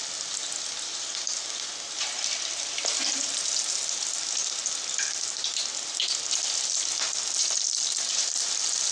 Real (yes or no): yes